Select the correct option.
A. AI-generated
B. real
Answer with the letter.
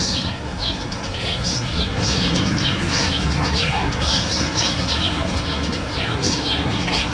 A